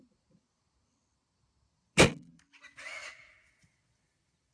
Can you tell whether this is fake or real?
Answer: real